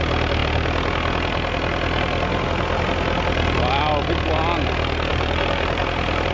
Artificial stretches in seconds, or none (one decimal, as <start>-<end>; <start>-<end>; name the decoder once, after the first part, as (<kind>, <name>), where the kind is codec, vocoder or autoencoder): 5.1-5.8 (vocoder, BigVGAN v2)